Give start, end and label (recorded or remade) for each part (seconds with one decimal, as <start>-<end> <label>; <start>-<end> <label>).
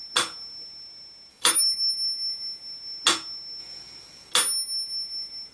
0.0-1.3 recorded; 1.3-1.9 remade; 1.9-3.6 recorded; 3.6-4.3 remade; 4.3-5.5 recorded